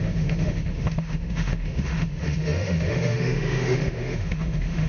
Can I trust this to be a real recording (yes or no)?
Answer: no